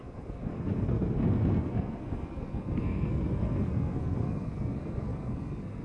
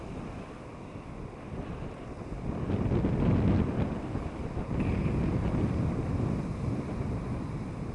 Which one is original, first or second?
second